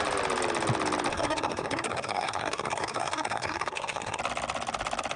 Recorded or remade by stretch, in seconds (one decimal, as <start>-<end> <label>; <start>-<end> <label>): 0.0-1.1 recorded; 1.1-4.2 remade; 4.2-5.2 recorded

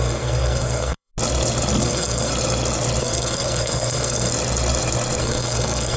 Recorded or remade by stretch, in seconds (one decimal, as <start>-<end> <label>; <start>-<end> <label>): 0.0-1.1 remade; 1.1-1.8 recorded; 1.8-2.3 remade; 2.3-3.0 recorded; 3.0-4.3 remade; 4.3-5.2 recorded; 5.2-6.0 remade

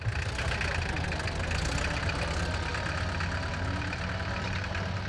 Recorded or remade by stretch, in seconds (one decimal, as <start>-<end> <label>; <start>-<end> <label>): 0.0-5.1 recorded

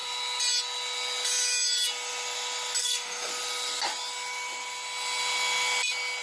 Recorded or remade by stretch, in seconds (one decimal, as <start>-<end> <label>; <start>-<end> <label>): 0.0-2.8 recorded; 2.8-3.3 remade; 3.3-6.2 recorded

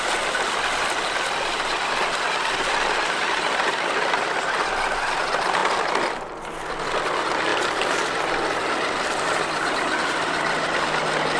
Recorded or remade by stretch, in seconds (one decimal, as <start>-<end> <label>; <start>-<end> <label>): 0.0-11.4 recorded

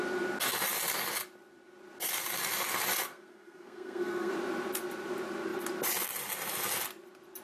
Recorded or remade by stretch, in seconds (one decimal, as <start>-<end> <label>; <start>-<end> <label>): 0.0-3.1 recorded; 3.1-4.3 remade; 4.3-7.4 recorded

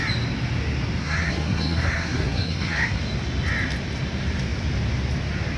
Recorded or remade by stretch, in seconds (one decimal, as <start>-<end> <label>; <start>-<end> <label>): 0.0-1.0 recorded; 1.0-3.0 remade; 3.0-5.6 recorded

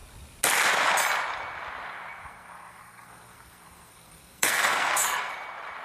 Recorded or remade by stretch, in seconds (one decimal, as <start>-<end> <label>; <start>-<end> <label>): 0.0-2.2 recorded; 2.2-5.3 remade; 5.3-5.8 recorded